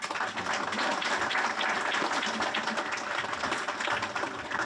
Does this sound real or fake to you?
real